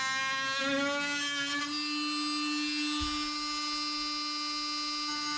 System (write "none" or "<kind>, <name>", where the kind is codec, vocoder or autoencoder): none